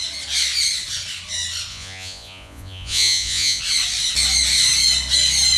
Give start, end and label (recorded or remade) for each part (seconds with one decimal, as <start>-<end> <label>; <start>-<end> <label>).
0.0-1.7 recorded; 1.7-3.6 remade; 3.6-5.6 recorded